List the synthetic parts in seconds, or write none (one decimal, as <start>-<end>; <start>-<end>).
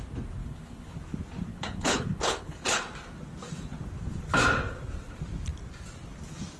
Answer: 0.4-1.0; 1.5-2.8